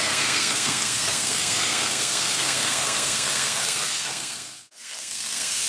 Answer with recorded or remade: remade